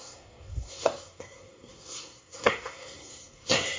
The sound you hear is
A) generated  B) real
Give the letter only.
A